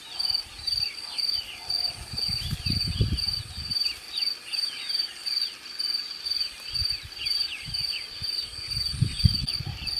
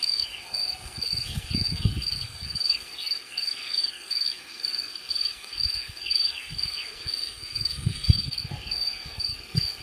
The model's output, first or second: second